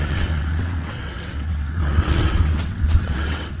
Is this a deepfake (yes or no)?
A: yes